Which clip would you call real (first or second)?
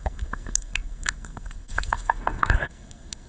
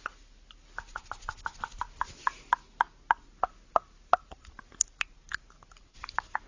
second